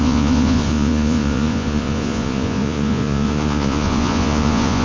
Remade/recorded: remade